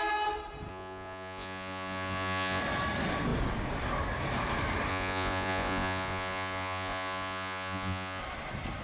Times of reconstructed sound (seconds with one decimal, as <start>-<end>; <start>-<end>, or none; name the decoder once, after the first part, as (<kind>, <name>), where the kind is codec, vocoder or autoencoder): 0.7-2.6 (vocoder, Vocos); 4.9-8.2